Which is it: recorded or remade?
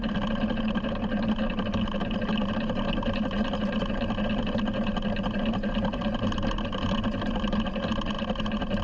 recorded